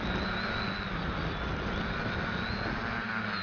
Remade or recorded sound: recorded